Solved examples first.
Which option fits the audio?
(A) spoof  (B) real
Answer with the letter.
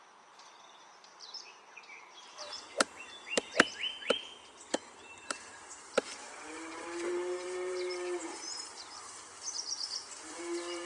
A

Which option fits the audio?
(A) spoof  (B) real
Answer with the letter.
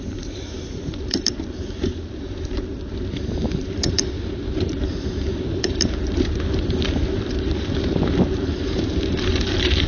A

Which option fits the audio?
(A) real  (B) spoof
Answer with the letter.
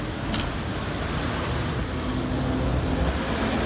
A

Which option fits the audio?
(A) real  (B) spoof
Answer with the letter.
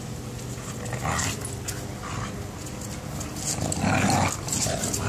A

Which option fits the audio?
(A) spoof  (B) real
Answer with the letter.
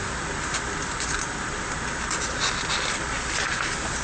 A